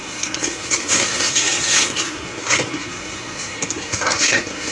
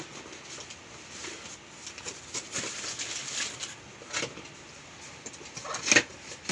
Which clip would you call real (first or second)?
second